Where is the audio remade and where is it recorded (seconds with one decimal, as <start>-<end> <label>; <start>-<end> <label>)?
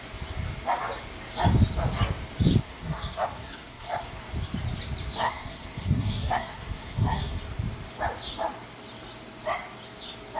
0.0-2.6 recorded; 2.6-4.0 remade; 4.0-5.2 recorded; 5.2-7.4 remade; 7.4-10.4 recorded